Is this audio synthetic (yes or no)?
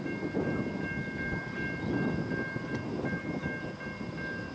no